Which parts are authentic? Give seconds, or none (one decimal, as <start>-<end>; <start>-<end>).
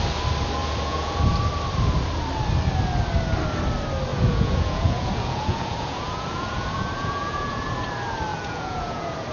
0.0-0.6; 1.2-4.1; 7.9-8.3